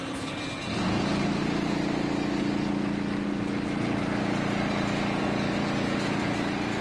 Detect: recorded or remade recorded